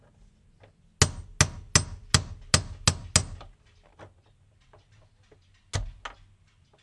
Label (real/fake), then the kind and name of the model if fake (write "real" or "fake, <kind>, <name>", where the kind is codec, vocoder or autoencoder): real